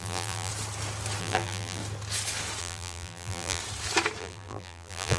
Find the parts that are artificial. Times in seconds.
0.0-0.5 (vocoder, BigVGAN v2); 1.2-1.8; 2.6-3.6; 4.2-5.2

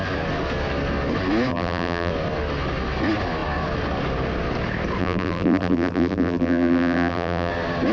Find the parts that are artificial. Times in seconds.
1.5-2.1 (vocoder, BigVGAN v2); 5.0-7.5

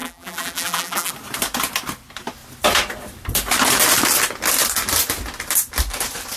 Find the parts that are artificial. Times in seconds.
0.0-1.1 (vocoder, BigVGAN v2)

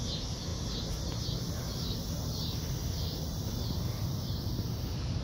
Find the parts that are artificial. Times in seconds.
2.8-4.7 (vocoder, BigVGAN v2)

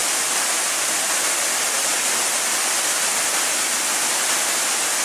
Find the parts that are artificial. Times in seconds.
3.0-5.0 (vocoder, BigVGAN v2)